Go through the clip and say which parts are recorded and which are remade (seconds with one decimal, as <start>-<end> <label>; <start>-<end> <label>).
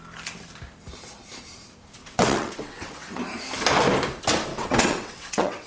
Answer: 0.0-2.0 recorded; 2.0-3.2 remade; 3.2-4.5 recorded; 4.5-5.7 remade